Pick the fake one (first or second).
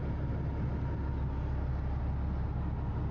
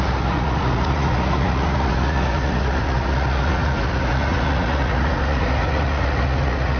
second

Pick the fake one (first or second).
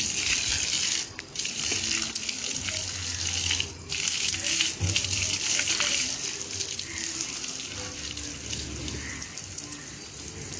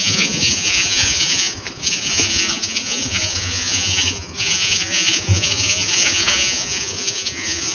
second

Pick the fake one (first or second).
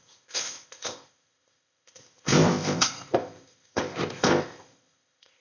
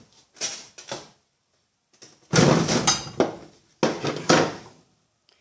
first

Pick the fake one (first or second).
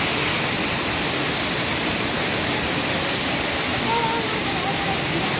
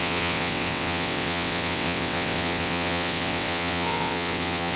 second